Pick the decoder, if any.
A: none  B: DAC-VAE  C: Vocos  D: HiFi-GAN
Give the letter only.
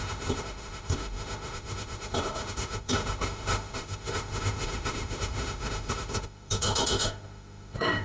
B